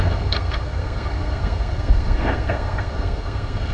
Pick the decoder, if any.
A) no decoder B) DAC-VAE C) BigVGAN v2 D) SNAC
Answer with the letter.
D